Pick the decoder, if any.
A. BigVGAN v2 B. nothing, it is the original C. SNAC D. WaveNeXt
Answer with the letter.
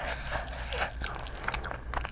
B